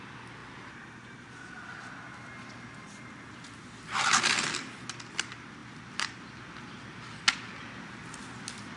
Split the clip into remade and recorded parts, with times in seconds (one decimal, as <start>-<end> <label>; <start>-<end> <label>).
0.0-8.8 recorded